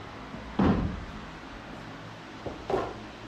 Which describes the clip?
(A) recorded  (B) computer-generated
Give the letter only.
A